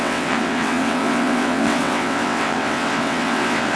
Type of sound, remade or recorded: remade